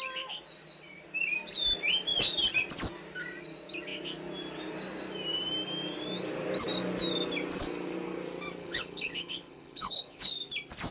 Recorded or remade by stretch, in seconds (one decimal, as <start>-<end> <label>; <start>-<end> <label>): 0.0-8.6 recorded; 8.6-10.3 remade; 10.3-10.9 recorded